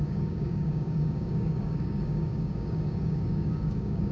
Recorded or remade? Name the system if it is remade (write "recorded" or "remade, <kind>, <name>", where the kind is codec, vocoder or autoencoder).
remade, codec, DAC